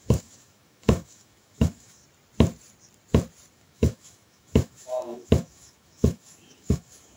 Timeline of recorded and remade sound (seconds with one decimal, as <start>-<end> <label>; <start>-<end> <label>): 0.0-2.0 remade; 2.0-3.5 recorded; 3.5-7.2 remade